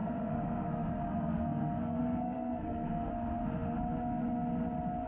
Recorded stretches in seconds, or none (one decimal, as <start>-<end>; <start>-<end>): 3.1-5.1